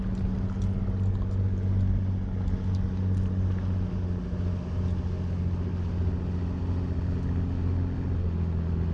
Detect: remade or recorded recorded